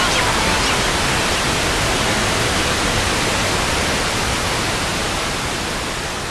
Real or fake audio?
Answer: real